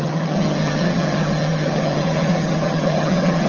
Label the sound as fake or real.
fake